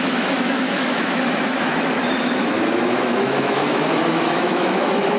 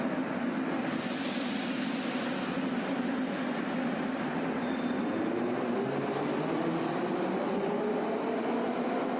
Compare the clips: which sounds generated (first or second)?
first